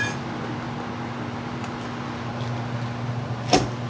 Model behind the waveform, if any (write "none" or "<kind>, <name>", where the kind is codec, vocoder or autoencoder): none